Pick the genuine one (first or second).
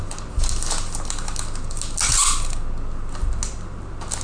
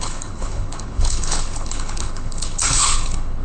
first